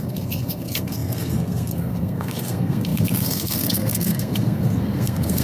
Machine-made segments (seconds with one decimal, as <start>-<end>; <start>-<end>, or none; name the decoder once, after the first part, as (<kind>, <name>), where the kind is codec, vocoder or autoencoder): 0.0-5.4 (codec, SNAC)